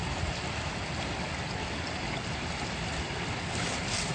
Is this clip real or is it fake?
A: real